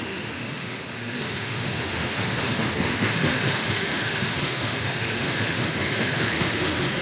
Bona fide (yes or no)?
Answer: no